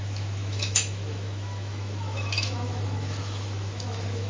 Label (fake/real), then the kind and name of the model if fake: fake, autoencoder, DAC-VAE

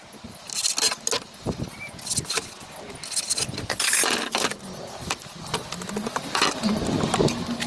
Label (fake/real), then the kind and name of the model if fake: real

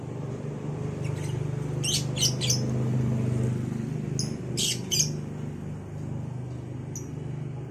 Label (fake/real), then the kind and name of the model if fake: real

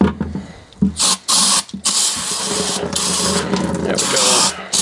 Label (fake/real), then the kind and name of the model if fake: real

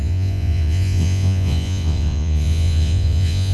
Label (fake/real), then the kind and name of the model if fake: fake, vocoder, Vocos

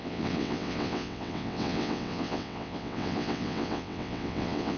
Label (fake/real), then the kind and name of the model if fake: fake, vocoder, WaveNeXt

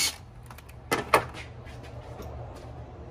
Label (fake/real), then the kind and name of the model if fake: real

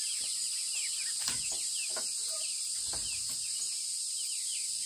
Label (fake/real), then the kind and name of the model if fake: real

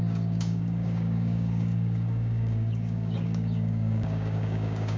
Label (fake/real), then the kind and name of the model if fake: fake, codec, DAC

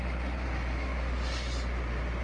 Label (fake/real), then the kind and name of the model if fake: real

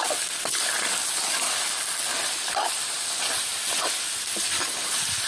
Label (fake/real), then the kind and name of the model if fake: real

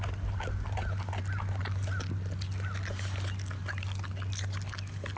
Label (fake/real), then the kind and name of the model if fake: real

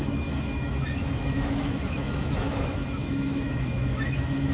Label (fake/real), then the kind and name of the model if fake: fake, autoencoder, DAC-VAE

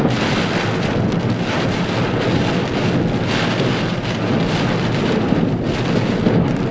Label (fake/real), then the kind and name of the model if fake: real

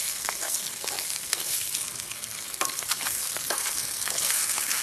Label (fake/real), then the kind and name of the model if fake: fake, codec, SNAC